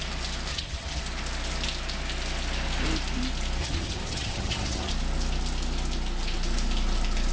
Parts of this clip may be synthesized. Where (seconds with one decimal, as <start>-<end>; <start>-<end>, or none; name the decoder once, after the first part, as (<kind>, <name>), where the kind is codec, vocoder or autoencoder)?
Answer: 0.5-1.0 (vocoder, HiFi-GAN); 3.6-4.9